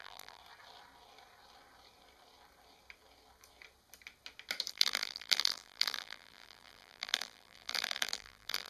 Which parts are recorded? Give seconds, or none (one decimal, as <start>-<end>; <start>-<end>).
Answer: 0.4-4.7